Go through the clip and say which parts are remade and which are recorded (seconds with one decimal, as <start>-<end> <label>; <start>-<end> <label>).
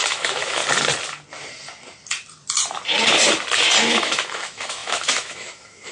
0.0-0.6 remade; 0.6-3.9 recorded; 3.9-5.9 remade